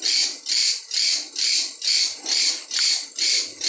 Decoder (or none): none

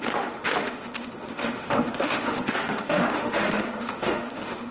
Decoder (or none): autoencoder, DAC-VAE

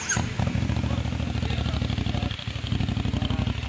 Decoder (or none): none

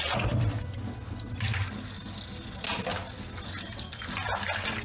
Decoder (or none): none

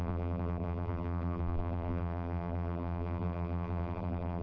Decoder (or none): vocoder, BigVGAN v2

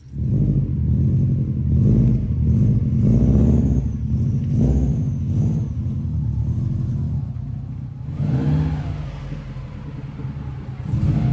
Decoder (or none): none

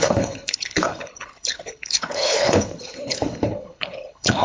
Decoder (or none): codec, HILCodec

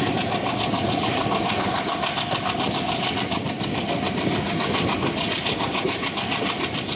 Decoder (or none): none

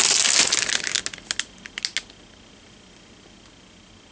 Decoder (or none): none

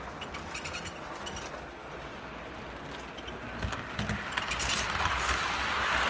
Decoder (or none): none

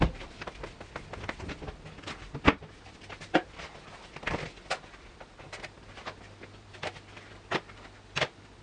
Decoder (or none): none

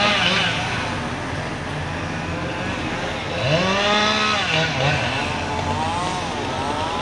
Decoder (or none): none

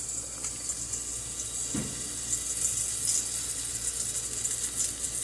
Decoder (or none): none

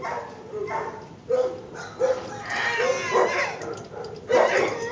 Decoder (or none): none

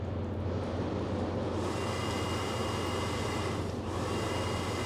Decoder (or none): none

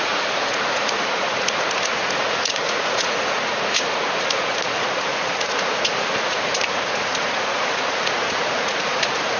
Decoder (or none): vocoder, Vocos